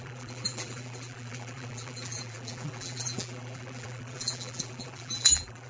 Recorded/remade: remade